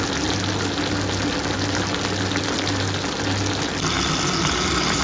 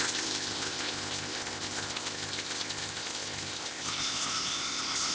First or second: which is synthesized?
second